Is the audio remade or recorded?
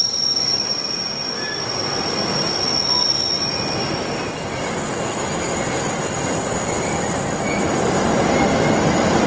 recorded